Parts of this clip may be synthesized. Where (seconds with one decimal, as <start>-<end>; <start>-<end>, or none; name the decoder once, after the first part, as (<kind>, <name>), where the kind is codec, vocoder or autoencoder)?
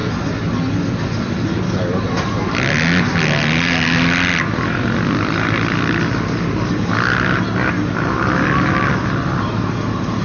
none